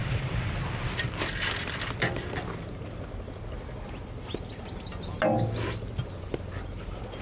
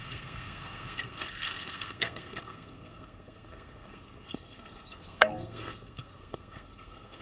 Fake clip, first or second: second